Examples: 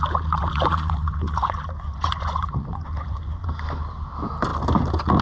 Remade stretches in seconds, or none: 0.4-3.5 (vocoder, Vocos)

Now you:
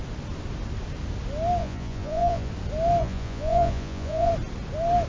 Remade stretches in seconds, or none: 1.6-2.5 (vocoder, Vocos); 3.0-4.3

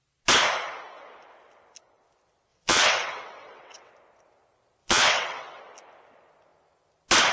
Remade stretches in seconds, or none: 2.5-3.9 (vocoder, WaveNeXt); 4.8-5.6

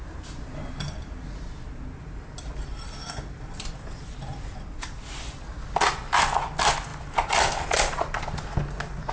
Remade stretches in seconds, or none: 4.3-4.8 (vocoder, BigVGAN v2); 6.9-7.5

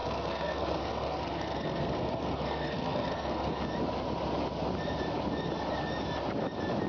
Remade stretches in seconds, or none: 0.0-3.6 (codec, SNAC)